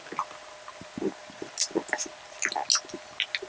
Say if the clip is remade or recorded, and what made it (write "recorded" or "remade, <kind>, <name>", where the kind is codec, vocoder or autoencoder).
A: recorded